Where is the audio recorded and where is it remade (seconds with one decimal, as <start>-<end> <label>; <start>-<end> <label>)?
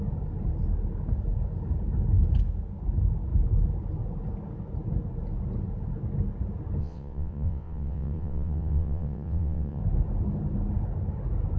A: 0.0-6.8 recorded; 6.8-9.8 remade; 9.8-11.6 recorded